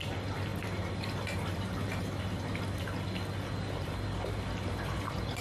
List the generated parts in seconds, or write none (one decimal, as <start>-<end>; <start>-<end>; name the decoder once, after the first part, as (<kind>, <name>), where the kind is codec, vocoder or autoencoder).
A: none